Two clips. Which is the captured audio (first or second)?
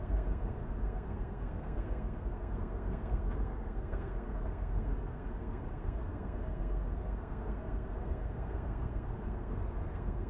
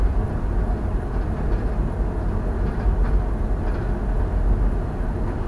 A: second